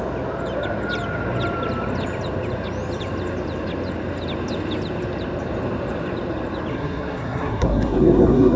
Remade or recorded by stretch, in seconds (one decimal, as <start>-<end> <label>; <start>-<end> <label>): 0.0-6.7 recorded; 6.7-8.6 remade

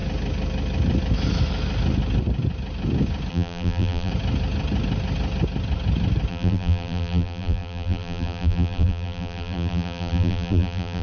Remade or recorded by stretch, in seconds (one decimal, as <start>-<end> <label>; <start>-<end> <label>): 0.0-3.3 recorded; 3.3-4.1 remade; 4.1-6.3 recorded; 6.3-11.0 remade

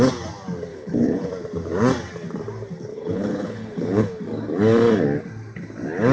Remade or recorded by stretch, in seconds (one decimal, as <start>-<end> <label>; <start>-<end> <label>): 0.0-0.7 recorded; 0.7-1.3 remade; 1.3-2.9 recorded; 2.9-4.2 remade; 4.2-6.1 recorded

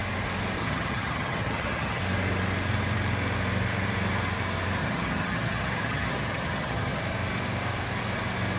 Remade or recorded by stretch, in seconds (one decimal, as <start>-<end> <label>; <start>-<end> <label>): 0.0-0.6 recorded; 0.6-2.0 remade; 2.0-4.8 recorded; 4.8-7.0 remade; 7.0-8.6 recorded

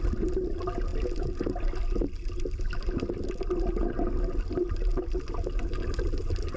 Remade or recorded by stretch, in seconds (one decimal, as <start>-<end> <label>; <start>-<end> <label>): 0.0-6.6 recorded